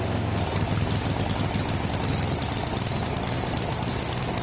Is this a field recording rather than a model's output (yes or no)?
yes